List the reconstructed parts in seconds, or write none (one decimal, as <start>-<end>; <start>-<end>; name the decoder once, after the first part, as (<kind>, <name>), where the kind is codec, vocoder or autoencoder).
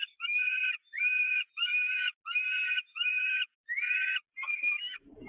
none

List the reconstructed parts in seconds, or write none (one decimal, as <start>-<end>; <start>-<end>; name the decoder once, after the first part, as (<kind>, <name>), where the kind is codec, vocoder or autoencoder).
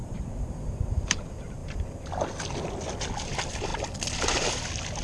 0.0-1.2 (vocoder, BigVGAN v2)